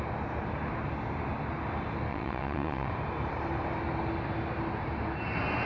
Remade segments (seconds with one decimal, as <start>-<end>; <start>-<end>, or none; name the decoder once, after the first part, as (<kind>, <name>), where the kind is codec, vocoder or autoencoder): 2.1-2.9 (vocoder, WaveNeXt)